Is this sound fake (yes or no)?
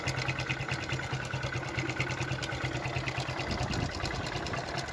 no